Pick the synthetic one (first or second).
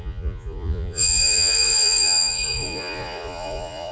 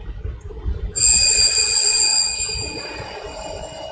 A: first